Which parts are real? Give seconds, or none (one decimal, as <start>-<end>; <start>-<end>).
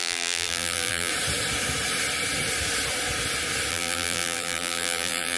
1.1-3.7